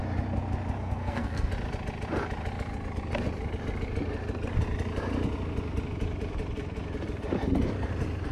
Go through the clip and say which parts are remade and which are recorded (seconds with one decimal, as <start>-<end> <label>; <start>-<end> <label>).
0.0-0.8 recorded; 0.8-1.5 remade; 1.5-8.3 recorded